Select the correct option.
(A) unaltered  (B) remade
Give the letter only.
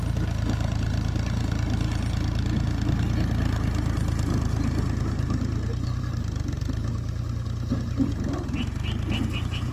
A